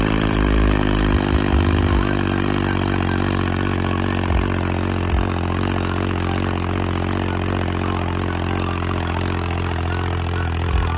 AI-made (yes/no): no